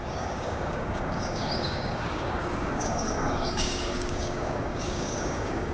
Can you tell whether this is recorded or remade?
remade